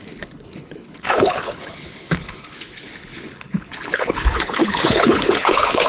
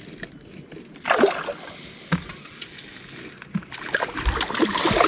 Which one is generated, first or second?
first